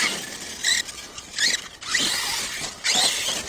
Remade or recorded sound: recorded